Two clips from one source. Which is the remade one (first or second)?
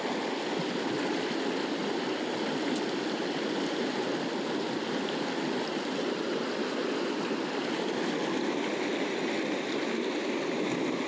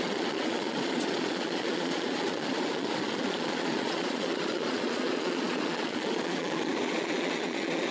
second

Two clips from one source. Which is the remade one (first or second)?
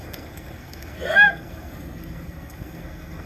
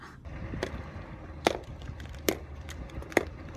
first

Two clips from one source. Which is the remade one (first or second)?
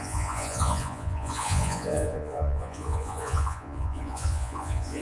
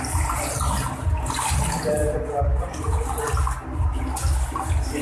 first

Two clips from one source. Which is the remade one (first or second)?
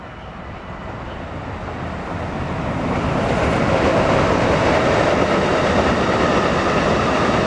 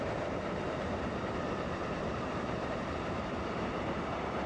second